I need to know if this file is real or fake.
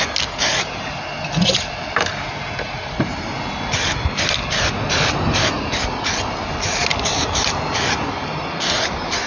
real